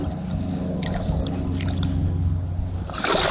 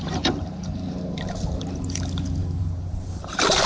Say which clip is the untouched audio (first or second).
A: first